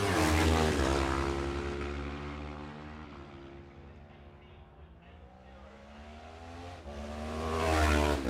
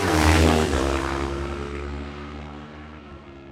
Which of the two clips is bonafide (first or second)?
first